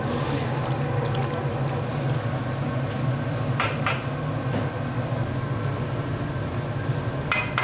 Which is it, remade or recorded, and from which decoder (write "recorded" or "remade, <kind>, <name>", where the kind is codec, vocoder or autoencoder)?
recorded